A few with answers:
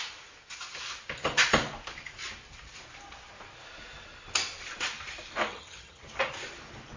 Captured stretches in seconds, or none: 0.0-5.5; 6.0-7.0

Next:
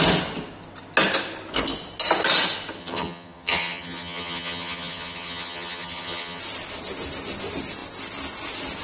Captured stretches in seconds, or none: 0.0-2.8; 6.4-8.8

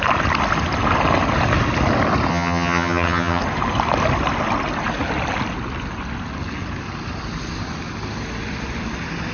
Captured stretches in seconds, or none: 0.0-2.3; 3.4-9.3

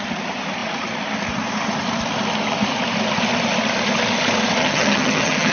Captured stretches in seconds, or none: 0.0-4.6

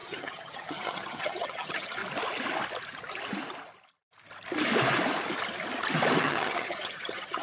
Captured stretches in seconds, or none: 2.0-6.2

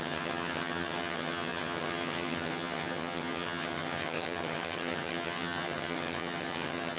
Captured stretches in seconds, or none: none

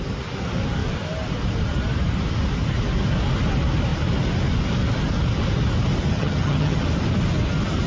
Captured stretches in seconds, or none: 0.0-6.1; 6.8-7.9

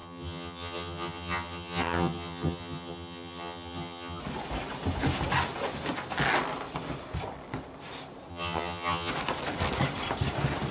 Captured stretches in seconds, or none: 4.2-8.3; 9.1-10.7